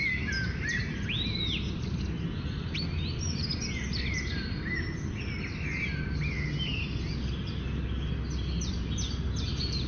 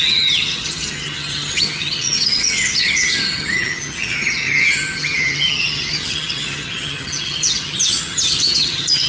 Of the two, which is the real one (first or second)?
first